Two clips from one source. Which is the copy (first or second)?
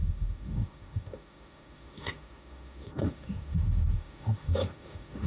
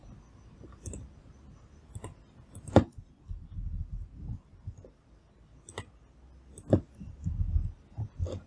first